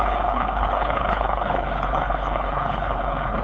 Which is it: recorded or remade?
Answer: remade